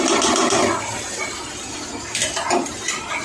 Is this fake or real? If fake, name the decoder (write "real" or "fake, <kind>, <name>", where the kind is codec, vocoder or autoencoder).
real